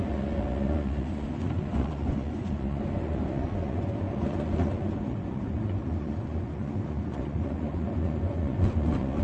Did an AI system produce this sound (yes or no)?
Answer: yes